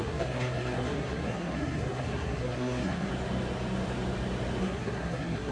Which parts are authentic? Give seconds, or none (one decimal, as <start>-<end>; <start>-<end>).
3.1-4.6